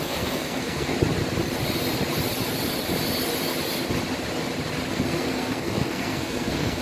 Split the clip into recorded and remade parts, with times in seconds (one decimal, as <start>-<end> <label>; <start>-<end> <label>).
0.0-0.9 remade; 0.9-4.9 recorded; 4.9-6.8 remade